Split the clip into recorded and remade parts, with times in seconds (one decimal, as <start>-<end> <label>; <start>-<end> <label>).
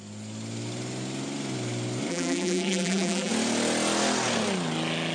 0.0-2.1 recorded; 2.1-3.3 remade; 3.3-5.1 recorded